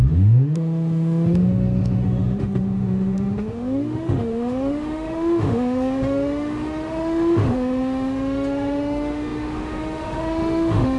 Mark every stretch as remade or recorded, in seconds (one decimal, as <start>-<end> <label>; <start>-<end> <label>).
0.0-11.0 remade